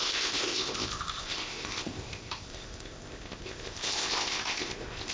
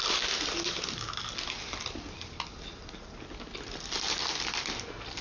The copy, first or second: first